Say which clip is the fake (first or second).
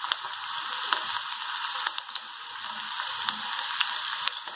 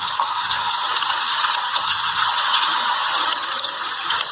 second